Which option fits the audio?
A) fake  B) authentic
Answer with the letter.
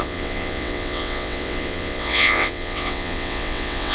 A